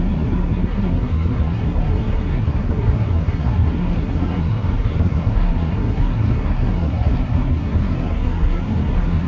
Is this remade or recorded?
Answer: remade